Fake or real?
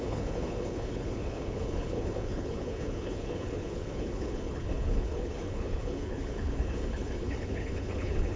fake